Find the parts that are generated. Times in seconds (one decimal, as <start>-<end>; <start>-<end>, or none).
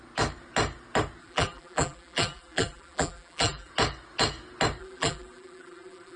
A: 1.2-3.7; 4.8-6.2